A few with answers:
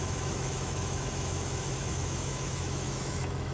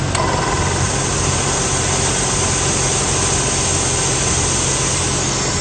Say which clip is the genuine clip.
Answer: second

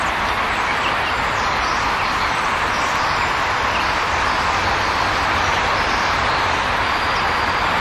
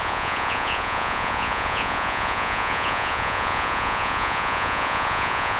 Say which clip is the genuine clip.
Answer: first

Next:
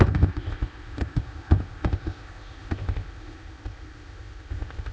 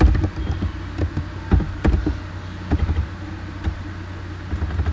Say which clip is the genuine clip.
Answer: second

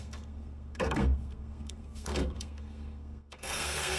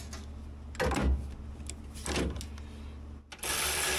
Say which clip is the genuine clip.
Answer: second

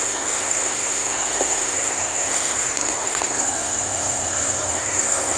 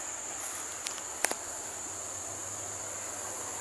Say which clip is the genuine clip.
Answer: second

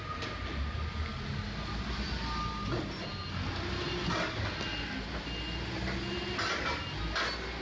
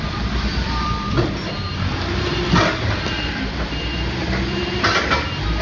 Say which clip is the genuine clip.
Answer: first